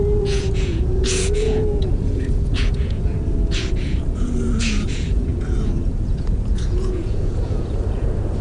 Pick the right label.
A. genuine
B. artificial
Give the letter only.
B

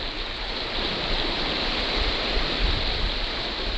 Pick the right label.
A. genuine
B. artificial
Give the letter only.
A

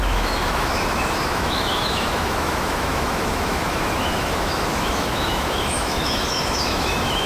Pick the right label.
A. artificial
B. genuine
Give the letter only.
A